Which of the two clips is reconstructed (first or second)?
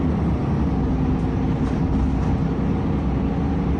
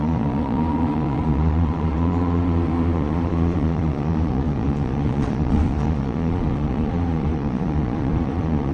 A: second